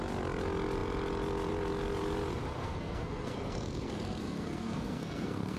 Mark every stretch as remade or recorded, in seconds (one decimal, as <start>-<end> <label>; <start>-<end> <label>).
0.0-2.6 recorded; 2.6-5.6 remade